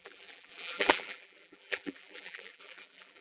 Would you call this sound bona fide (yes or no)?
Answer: no